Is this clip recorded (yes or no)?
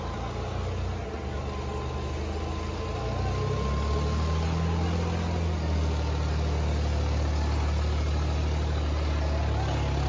yes